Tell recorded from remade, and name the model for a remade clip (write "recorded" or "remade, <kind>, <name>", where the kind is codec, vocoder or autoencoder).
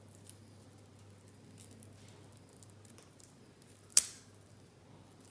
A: recorded